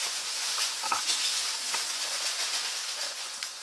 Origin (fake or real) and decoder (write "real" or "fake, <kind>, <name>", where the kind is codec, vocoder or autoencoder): fake, vocoder, Vocos